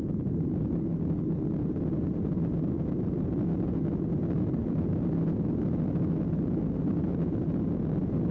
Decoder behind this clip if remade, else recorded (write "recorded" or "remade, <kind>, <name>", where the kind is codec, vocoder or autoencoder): remade, vocoder, BigVGAN v2